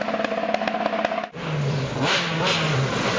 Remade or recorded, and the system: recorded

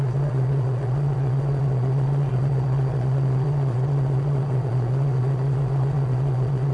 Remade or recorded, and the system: remade, vocoder, Vocos